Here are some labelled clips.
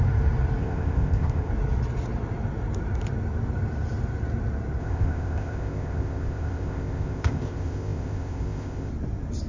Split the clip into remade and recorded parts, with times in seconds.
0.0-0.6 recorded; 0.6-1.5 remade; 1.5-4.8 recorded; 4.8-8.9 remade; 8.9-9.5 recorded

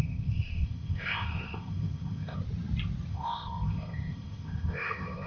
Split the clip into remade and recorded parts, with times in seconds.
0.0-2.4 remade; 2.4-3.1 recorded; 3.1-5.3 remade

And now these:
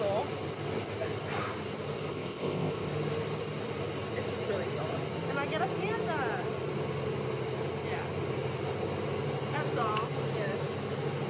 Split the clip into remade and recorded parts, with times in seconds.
0.0-2.1 recorded; 2.1-2.9 remade; 2.9-11.3 recorded

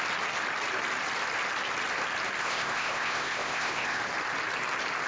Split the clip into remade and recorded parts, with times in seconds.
0.0-2.4 recorded; 2.4-4.0 remade; 4.0-5.1 recorded

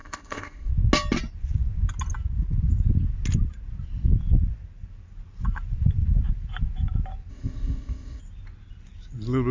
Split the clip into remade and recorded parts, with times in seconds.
0.0-0.7 remade; 0.7-7.3 recorded; 7.3-8.2 remade; 8.2-9.5 recorded